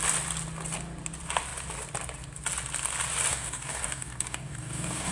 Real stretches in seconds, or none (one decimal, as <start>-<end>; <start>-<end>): 0.0-3.3

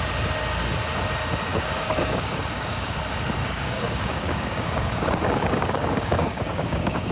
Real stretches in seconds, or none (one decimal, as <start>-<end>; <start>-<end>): 0.0-1.5; 3.0-3.4

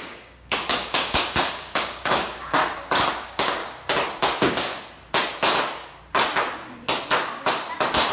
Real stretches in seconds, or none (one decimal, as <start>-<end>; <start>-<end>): 2.6-3.1; 3.6-4.2; 4.7-8.1

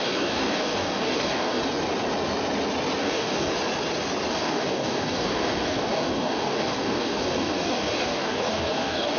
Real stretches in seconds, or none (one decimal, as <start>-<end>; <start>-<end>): 1.6-3.0; 3.5-4.3

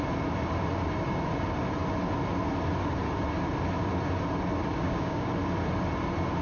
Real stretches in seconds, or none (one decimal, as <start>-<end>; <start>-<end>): 0.0-4.8; 5.3-6.4